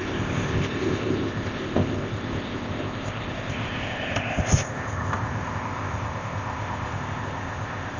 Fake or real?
fake